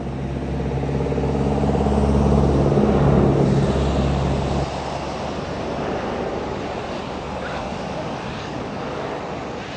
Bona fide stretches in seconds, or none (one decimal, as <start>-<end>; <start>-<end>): 0.0-6.8; 9.2-9.8